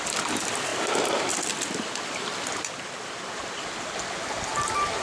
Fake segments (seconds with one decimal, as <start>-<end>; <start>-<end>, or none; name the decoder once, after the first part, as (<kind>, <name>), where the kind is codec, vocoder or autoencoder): none